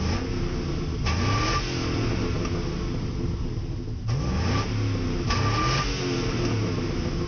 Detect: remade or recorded recorded